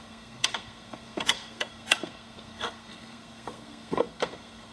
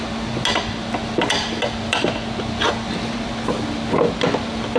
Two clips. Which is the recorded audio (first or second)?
second